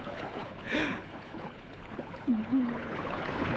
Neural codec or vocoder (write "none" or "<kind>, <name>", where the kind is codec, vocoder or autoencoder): codec, HILCodec